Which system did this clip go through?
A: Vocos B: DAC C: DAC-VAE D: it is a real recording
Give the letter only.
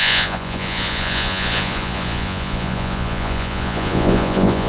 A